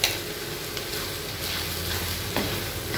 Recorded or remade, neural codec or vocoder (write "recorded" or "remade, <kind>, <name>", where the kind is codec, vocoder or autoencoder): recorded